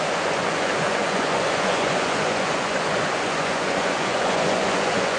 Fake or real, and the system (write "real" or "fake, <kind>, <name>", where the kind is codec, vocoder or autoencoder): fake, vocoder, Vocos